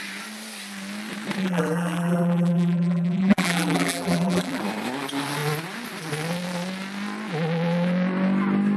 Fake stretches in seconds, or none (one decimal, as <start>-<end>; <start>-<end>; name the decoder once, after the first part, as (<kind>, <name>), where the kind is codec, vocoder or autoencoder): 1.4-4.6 (vocoder, BigVGAN v2)